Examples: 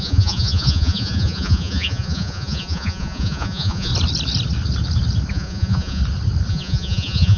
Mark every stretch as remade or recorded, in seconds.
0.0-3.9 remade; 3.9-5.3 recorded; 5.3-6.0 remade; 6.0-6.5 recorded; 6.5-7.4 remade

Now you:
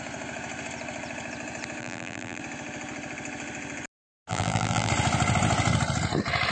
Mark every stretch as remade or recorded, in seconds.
0.0-1.8 recorded; 1.8-2.4 remade; 2.4-4.3 recorded; 4.3-4.9 remade; 4.9-6.5 recorded

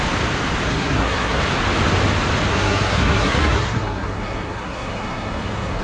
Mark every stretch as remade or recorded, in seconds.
0.0-0.7 recorded; 0.7-1.4 remade; 1.4-2.5 recorded; 2.5-5.8 remade

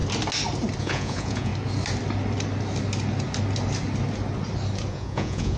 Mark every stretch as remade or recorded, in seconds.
0.0-0.8 recorded; 0.8-1.5 remade; 1.5-4.9 recorded; 4.9-5.6 remade

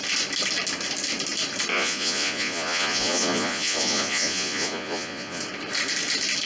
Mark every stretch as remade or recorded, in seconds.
0.0-1.7 recorded; 1.7-5.4 remade; 5.4-6.5 recorded